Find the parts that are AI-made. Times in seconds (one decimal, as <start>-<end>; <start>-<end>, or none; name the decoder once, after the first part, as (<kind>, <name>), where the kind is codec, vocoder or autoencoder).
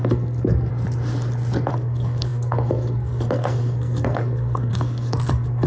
0.0-0.7 (codec, SNAC); 1.7-5.7